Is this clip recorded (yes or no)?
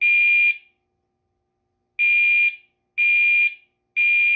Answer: yes